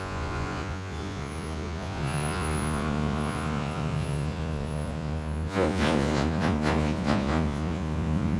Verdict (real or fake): fake